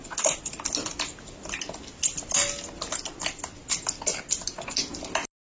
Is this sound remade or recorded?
recorded